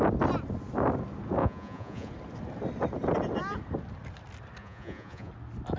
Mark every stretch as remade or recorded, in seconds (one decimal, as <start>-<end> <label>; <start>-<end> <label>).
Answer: 0.0-1.4 recorded; 1.4-2.1 remade; 2.1-4.6 recorded; 4.6-5.3 remade; 5.3-5.8 recorded